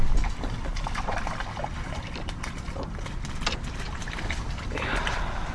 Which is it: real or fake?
real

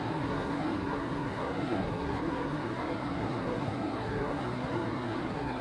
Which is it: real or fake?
fake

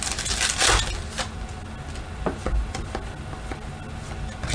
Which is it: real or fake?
real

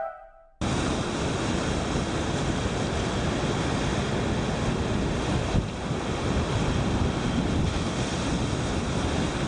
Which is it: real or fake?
real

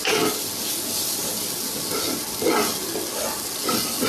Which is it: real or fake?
real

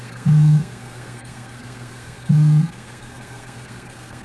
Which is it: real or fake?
fake